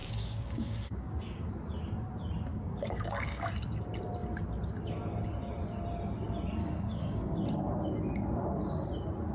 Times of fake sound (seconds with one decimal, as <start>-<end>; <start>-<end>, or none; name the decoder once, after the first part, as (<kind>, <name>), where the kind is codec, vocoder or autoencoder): 0.0-1.5 (codec, DAC); 2.5-3.5; 6.6-7.4

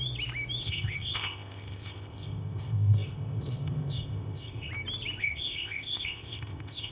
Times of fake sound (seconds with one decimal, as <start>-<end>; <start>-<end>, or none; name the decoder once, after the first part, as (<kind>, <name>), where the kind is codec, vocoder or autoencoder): 0.6-4.7 (codec, ZipCodec); 5.2-6.9

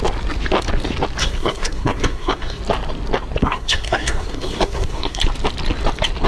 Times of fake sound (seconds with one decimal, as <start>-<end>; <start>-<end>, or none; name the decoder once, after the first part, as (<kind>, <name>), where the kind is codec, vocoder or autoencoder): 1.2-2.6 (codec, SNAC); 3.4-5.2

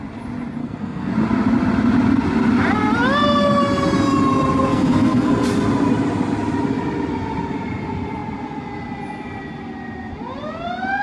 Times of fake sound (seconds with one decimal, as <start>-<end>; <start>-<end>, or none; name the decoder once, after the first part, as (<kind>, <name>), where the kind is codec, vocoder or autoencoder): 0.6-1.1 (codec, SNAC); 4.7-5.3

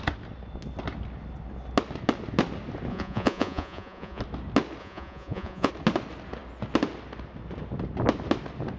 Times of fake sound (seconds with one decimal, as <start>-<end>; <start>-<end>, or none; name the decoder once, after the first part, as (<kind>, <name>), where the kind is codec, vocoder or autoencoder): 2.9-4.2 (vocoder, Vocos); 4.8-5.7